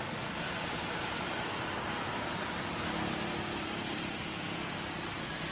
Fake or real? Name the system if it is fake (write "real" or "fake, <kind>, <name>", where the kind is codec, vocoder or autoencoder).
real